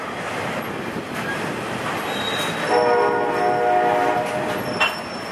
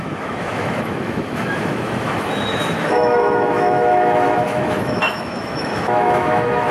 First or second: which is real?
first